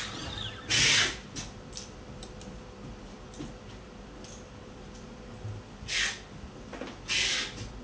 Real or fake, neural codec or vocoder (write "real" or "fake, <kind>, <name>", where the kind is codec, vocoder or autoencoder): real